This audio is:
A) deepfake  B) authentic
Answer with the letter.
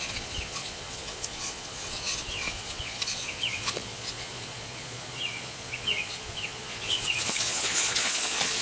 A